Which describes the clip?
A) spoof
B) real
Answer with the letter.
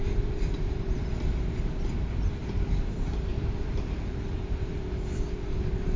A